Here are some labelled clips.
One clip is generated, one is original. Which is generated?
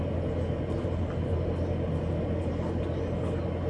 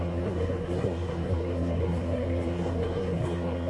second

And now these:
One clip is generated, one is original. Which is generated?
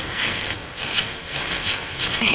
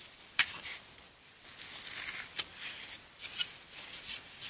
first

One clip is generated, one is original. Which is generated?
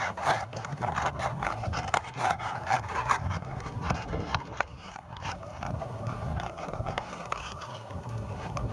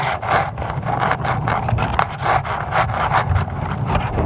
first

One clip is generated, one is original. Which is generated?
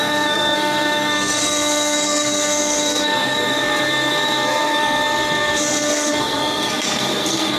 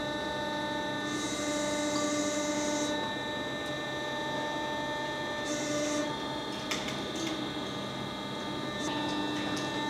first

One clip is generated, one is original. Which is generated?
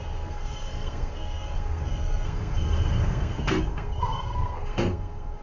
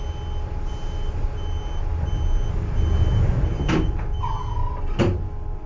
first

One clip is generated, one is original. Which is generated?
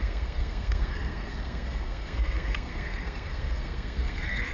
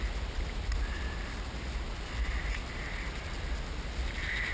first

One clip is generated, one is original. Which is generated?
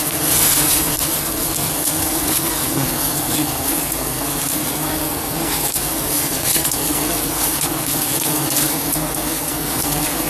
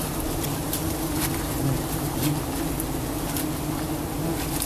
first